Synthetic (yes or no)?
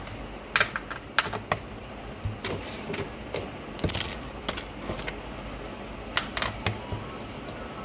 no